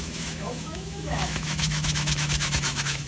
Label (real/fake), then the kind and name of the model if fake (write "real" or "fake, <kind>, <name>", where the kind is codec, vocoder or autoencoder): fake, autoencoder, DAC-VAE